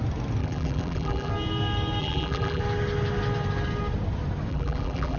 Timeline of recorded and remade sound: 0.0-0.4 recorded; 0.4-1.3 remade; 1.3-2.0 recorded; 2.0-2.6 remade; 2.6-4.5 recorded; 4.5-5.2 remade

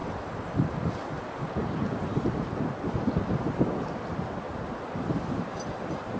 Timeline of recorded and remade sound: 0.0-1.5 remade; 1.5-6.2 recorded

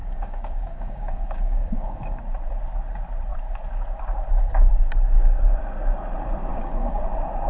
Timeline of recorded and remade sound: 0.0-2.2 remade; 2.2-6.5 recorded; 6.5-7.0 remade; 7.0-7.5 recorded

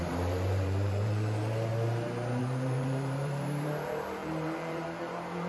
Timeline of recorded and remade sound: 0.0-1.7 remade; 1.7-2.4 recorded; 2.4-5.5 remade

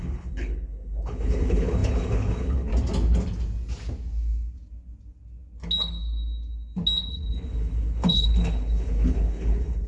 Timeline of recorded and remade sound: 0.0-2.7 remade; 2.7-7.1 recorded; 7.1-9.9 remade